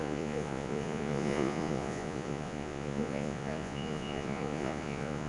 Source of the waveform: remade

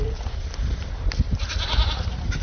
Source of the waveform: recorded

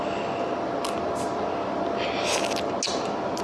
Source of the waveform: recorded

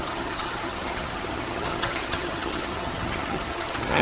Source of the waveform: remade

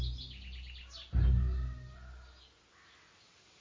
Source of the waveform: recorded